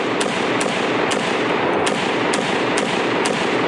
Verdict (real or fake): real